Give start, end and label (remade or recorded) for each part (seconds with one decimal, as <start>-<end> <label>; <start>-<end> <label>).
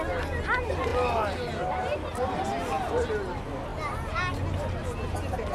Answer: 0.0-5.5 recorded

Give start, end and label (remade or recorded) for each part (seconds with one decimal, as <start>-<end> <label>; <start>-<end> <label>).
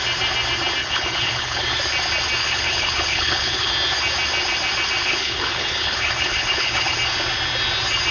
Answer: 0.0-0.8 recorded; 0.8-1.6 remade; 1.6-2.4 recorded; 2.4-3.7 remade; 3.7-5.0 recorded; 5.0-6.9 remade; 6.9-8.1 recorded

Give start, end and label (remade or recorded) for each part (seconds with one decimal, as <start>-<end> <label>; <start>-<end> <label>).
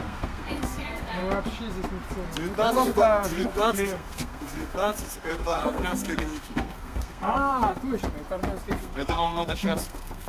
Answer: 0.0-1.2 remade; 1.2-2.7 recorded; 2.7-7.8 remade; 7.8-8.8 recorded; 8.8-10.3 remade